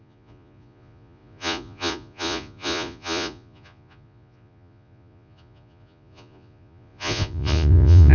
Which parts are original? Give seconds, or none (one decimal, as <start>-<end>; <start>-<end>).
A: none